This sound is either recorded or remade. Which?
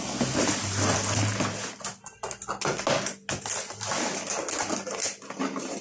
recorded